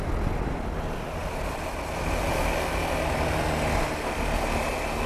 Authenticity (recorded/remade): recorded